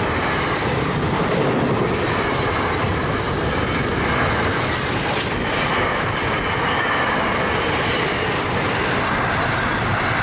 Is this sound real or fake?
real